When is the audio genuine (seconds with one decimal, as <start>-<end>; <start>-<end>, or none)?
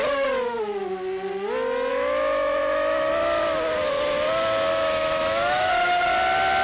0.0-1.9; 3.1-4.7; 5.7-6.6